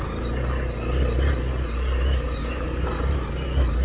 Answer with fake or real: real